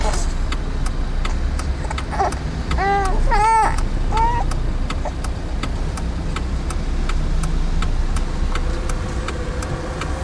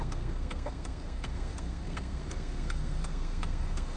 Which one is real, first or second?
first